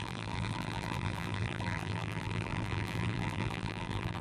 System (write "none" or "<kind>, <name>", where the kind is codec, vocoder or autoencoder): vocoder, BigVGAN v2